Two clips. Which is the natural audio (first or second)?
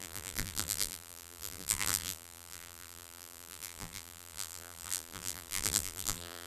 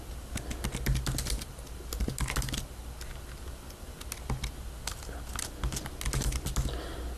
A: second